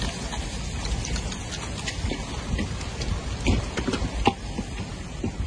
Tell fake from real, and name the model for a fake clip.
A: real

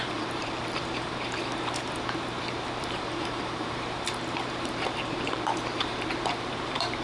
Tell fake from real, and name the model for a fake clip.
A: fake, vocoder, BigVGAN v2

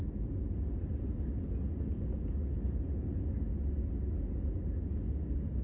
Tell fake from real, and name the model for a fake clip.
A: real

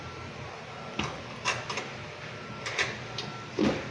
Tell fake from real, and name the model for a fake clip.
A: real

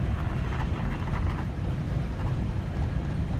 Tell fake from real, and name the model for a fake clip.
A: real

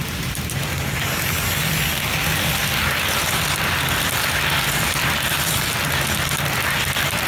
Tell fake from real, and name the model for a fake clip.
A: real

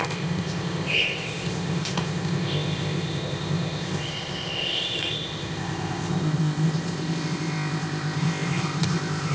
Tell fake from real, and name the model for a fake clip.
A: fake, codec, ZipCodec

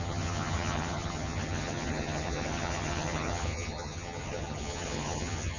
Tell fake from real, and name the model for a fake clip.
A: fake, vocoder, HiFi-GAN